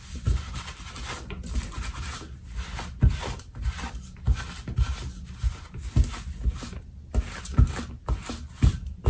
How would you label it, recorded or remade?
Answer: recorded